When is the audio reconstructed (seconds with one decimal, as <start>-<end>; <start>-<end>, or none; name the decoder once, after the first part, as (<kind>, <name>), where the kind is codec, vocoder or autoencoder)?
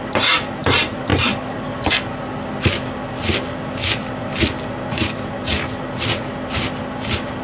none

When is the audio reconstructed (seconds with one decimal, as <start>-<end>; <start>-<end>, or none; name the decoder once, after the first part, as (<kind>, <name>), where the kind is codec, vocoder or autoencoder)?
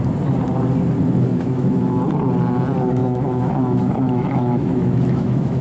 1.3-2.0 (autoencoder, DAC-VAE); 3.0-5.6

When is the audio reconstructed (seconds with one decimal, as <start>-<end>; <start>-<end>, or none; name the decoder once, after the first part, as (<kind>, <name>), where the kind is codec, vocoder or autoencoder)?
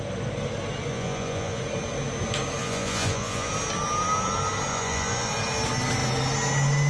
0.9-1.6 (vocoder, Vocos); 2.6-3.5; 4.7-5.3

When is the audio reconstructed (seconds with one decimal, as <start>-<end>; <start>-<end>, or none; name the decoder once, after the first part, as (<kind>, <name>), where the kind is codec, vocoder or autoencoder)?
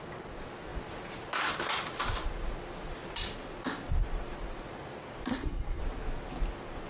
5.3-5.8 (codec, SNAC)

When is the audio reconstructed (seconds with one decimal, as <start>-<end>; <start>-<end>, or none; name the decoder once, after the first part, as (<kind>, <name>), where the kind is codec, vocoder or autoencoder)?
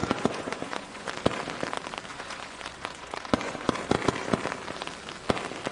0.0-1.1 (vocoder, Vocos); 2.1-3.7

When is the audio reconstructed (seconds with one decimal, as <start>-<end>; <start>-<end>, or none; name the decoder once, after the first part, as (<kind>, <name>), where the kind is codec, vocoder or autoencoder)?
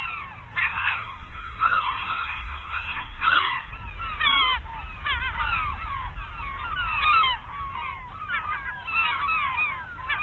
0.6-3.7 (codec, SNAC)